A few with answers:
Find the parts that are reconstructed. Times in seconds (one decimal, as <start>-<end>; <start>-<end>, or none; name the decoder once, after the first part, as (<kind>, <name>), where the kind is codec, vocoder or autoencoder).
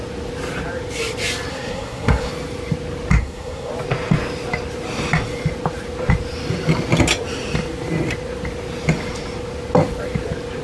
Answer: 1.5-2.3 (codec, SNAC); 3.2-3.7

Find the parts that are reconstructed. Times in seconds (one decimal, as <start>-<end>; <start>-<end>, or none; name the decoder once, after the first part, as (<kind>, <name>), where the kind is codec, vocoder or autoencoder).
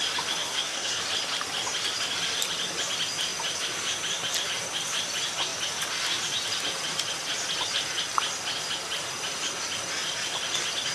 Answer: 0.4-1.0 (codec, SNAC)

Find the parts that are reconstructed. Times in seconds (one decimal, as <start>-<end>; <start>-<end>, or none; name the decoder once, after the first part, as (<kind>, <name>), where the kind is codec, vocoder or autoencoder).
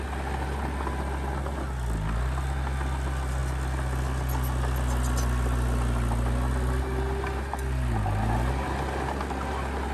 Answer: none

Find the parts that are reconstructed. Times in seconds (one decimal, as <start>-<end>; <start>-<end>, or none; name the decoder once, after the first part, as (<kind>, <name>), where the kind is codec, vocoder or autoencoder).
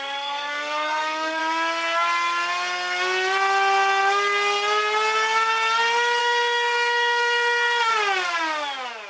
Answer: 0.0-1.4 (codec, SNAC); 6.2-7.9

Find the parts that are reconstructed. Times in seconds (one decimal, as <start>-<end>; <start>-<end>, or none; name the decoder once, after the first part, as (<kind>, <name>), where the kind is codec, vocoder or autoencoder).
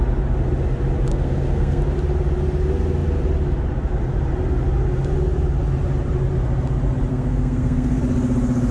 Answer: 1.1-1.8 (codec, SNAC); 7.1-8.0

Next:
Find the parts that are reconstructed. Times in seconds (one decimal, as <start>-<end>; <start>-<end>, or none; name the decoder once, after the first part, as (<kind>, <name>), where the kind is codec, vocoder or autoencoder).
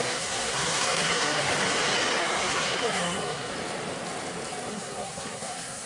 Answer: 0.0-1.5 (codec, SNAC); 2.2-3.5; 4.7-5.9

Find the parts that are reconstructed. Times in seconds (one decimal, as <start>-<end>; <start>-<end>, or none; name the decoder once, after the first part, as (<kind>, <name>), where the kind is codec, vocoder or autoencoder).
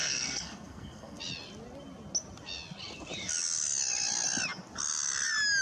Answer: 0.0-1.2 (codec, SNAC)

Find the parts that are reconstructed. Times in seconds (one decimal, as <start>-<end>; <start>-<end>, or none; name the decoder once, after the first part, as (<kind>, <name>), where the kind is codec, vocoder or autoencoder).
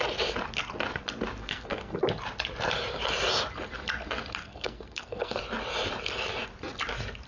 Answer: 1.4-2.0 (codec, SNAC); 4.4-5.4